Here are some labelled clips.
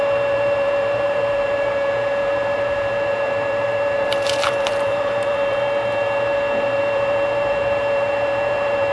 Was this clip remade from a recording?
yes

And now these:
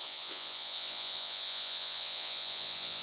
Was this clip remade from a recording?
yes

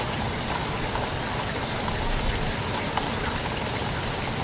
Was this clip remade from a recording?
no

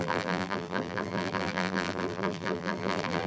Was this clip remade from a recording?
yes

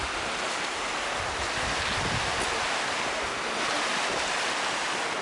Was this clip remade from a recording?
no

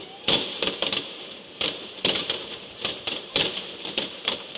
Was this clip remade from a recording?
yes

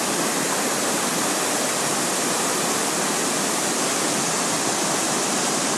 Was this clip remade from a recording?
no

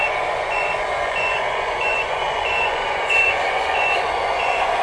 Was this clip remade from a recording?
yes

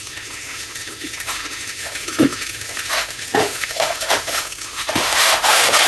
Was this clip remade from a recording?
yes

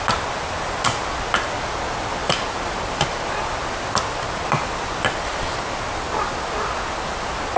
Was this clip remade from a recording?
no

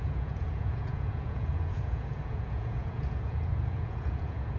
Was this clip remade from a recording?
yes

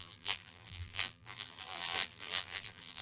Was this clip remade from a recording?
yes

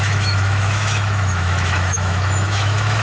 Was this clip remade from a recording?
yes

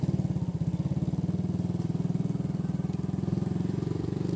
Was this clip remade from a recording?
no